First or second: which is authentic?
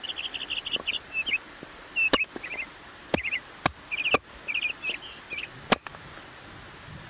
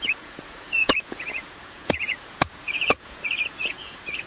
first